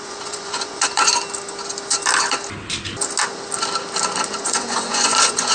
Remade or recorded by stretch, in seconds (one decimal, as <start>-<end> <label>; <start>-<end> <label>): 0.0-1.1 remade; 1.1-4.4 recorded; 4.4-5.5 remade